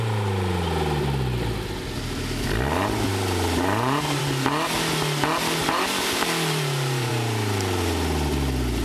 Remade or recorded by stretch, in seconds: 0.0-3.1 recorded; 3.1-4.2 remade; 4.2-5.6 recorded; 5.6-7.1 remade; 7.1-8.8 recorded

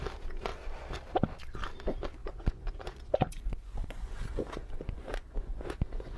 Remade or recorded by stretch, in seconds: 0.0-2.2 recorded; 2.2-6.2 remade

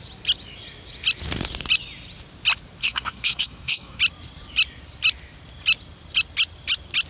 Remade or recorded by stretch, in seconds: 0.0-2.8 recorded; 2.8-4.0 remade; 4.0-7.1 recorded